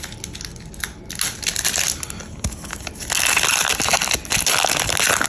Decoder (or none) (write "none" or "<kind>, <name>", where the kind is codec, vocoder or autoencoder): none